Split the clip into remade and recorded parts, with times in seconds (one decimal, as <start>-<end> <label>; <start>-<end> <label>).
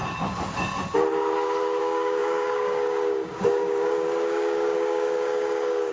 0.0-1.8 recorded; 1.8-5.9 remade